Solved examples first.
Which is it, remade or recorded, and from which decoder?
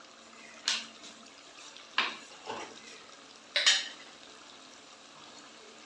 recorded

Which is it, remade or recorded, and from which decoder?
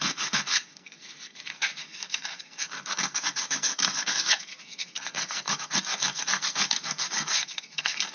remade, codec, SNAC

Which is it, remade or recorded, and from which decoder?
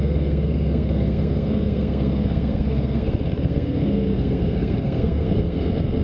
remade, codec, SNAC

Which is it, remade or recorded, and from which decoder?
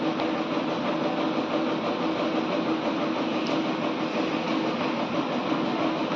recorded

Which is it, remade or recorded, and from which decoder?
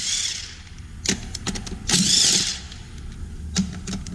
recorded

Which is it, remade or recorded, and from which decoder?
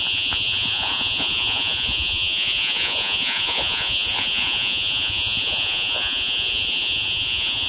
remade, vocoder, Vocos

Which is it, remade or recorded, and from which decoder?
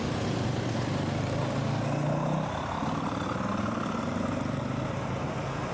recorded